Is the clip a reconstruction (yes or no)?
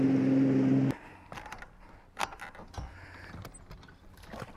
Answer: no